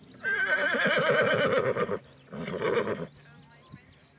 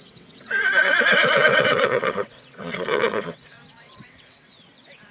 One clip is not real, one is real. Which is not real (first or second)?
second